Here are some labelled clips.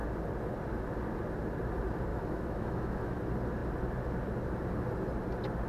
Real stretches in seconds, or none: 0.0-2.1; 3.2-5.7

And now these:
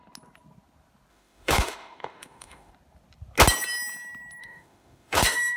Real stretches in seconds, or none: 0.0-1.1; 2.7-4.4

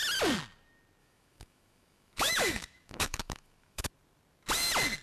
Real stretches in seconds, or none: 0.0-1.0; 3.9-5.0

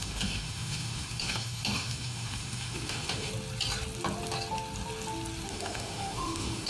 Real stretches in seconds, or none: 3.3-5.5

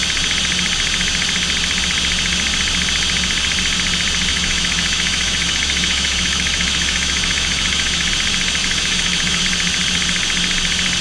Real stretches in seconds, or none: 0.0-4.3; 8.1-8.6; 9.4-11.0